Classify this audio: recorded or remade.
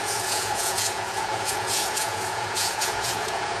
remade